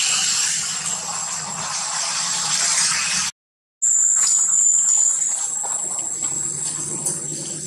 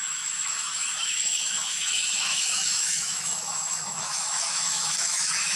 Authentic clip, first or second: first